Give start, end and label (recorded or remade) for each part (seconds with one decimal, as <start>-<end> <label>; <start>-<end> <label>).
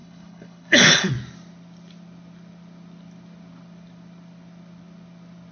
0.0-1.1 remade; 1.1-5.5 recorded